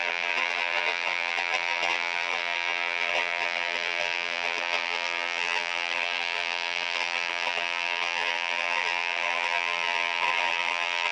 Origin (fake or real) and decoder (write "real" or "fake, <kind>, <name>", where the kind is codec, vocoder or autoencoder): fake, vocoder, BigVGAN v2